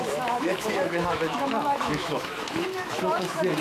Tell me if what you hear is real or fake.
fake